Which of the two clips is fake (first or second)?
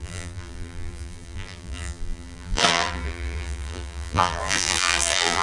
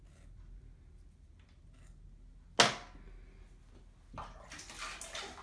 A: first